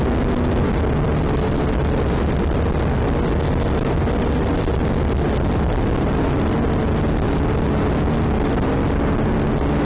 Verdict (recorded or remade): recorded